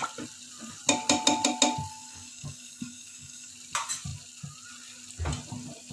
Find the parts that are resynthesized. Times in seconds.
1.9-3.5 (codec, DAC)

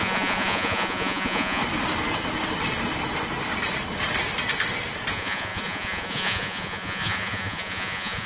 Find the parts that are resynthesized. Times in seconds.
0.0-1.6 (vocoder, Vocos); 5.1-8.3

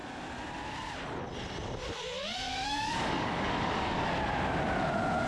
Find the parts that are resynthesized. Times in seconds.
2.5-4.1 (codec, DAC)

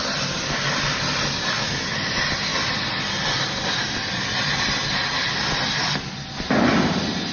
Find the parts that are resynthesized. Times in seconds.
none

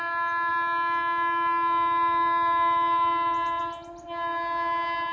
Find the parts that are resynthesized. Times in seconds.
none

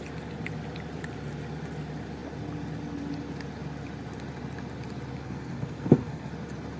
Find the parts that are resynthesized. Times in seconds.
5.2-6.3 (codec, SNAC)

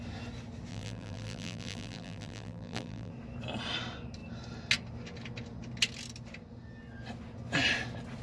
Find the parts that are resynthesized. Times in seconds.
0.7-3.1 (vocoder, BigVGAN v2)

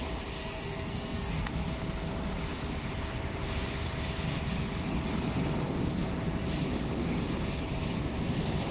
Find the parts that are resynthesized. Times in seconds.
0.4-1.5 (codec, SNAC)